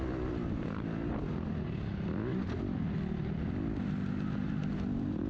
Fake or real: real